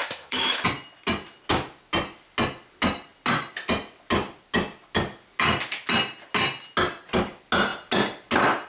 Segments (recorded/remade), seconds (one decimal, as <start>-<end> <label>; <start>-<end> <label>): 0.0-0.6 remade; 0.6-8.7 recorded